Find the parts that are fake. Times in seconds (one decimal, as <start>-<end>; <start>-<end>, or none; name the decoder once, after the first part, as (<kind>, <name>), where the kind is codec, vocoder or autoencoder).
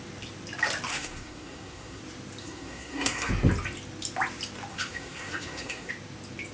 0.9-2.0 (codec, SNAC); 2.4-3.3; 4.7-5.9